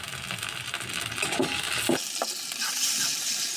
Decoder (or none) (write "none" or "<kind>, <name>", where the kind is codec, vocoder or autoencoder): none